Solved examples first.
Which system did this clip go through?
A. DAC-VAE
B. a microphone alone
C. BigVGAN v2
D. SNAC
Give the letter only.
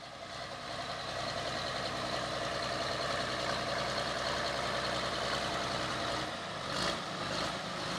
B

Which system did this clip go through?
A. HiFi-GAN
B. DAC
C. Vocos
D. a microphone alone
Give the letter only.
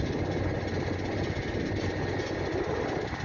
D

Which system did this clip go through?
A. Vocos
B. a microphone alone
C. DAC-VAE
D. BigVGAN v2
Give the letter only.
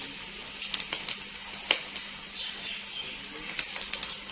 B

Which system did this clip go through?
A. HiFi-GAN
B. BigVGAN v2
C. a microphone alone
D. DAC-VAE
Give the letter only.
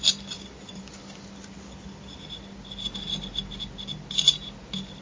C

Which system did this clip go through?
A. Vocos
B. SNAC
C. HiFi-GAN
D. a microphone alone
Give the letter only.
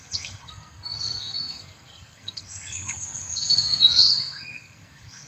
B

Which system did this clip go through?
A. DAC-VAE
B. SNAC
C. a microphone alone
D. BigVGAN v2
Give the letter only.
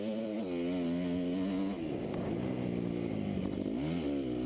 C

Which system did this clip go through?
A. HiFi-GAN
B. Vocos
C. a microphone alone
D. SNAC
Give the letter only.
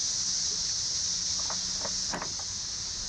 C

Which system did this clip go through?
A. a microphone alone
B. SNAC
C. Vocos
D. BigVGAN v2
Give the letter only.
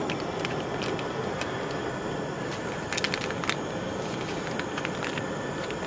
A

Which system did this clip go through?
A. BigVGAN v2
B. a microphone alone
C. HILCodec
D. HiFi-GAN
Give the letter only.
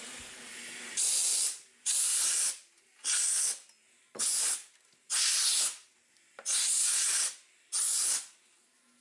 B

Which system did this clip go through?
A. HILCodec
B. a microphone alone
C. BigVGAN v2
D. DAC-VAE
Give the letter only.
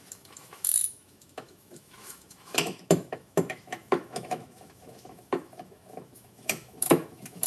D